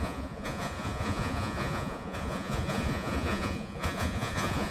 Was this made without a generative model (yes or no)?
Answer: no